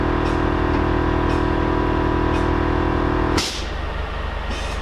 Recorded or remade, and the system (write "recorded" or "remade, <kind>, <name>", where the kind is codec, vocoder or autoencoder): recorded